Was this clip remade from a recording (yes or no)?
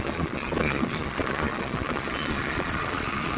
yes